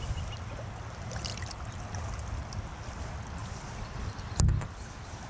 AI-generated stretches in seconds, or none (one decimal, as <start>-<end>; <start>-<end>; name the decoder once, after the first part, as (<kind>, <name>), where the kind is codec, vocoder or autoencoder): none